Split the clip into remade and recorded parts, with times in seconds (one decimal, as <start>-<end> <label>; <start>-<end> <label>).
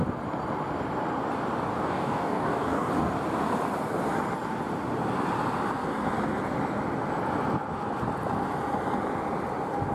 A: 0.0-1.7 recorded; 1.7-2.9 remade; 2.9-9.9 recorded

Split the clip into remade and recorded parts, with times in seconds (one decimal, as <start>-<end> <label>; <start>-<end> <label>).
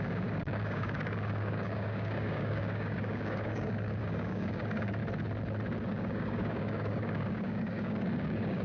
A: 0.0-5.0 remade; 5.0-5.9 recorded; 5.9-8.6 remade